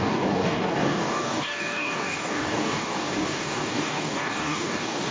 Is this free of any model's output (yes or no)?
no